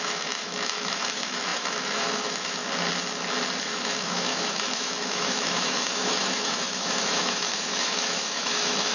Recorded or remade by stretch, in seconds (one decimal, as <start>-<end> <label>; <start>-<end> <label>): 0.0-2.6 remade; 2.6-3.6 recorded; 3.6-8.9 remade